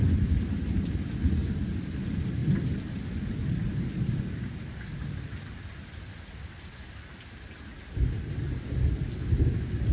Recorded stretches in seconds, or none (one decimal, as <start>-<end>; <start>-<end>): 0.0-9.9